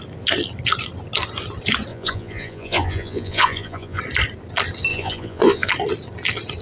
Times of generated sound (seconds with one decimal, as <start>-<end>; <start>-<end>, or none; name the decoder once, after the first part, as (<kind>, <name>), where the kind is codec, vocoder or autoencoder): 1.9-4.0 (vocoder, Vocos); 4.9-5.7